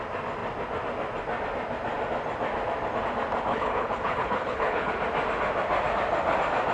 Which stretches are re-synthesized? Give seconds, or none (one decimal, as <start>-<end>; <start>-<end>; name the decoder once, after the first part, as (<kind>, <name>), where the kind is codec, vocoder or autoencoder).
3.5-4.9 (codec, HILCodec)